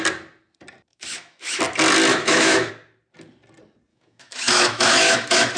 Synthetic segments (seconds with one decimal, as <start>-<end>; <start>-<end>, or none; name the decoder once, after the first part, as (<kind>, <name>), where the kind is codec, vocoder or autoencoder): 0.9-1.6 (autoencoder, DAC-VAE); 2.1-2.7; 3.9-5.6